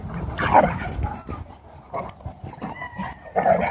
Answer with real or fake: real